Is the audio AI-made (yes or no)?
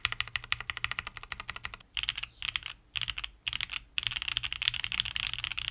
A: no